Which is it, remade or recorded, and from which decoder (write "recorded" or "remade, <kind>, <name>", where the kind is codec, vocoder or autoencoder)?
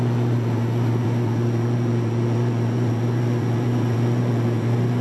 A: remade, vocoder, Vocos